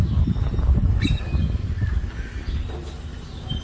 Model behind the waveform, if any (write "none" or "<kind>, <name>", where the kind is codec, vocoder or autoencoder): none